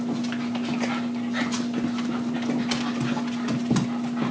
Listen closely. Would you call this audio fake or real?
real